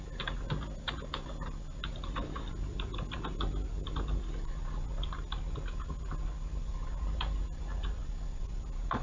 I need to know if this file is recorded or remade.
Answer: recorded